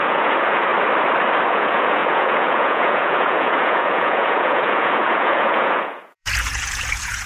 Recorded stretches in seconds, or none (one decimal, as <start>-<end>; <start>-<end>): 0.7-1.5